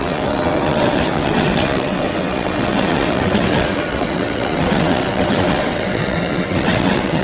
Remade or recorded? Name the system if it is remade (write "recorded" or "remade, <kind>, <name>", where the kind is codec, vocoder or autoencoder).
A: remade, vocoder, WaveNeXt